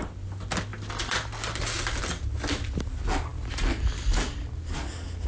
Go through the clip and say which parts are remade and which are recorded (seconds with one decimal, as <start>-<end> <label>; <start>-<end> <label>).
0.0-5.3 recorded